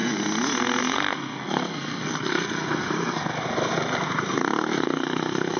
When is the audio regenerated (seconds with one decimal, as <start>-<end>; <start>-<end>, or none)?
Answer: 0.8-3.2; 4.8-5.6